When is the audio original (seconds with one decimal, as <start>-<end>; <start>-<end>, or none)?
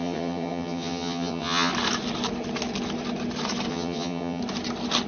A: 1.7-3.7; 4.4-5.1